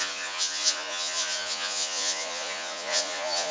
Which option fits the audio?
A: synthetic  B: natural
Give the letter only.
A